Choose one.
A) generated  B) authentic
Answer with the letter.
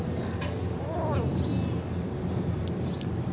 B